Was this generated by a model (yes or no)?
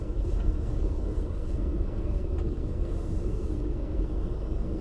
yes